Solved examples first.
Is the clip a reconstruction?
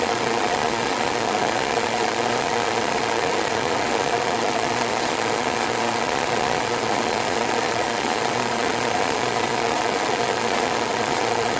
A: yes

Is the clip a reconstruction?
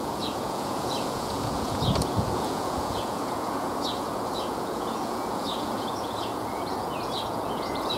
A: yes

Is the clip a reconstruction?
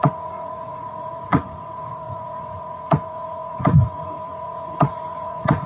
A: yes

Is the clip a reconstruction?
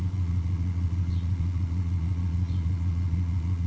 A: yes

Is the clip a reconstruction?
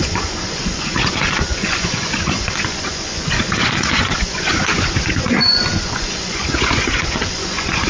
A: yes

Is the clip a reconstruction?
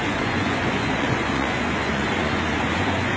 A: yes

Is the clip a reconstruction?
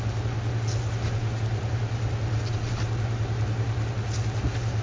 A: no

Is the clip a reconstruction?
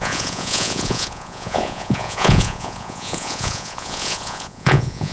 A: yes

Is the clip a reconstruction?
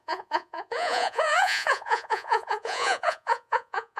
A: yes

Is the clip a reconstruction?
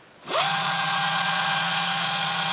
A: yes